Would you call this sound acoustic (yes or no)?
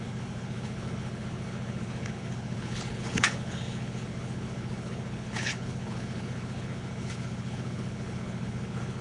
no